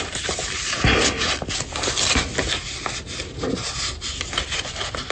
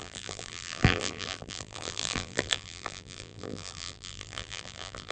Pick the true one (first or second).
first